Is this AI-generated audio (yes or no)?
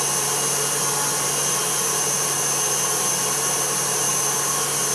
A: no